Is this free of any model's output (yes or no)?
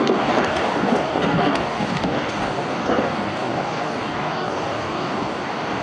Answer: no